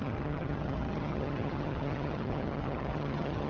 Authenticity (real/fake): fake